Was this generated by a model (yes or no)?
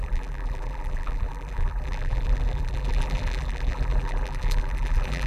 yes